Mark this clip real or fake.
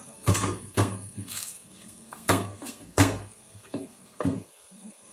fake